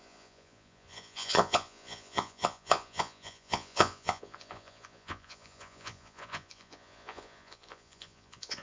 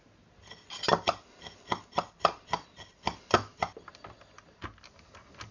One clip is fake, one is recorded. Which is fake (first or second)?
first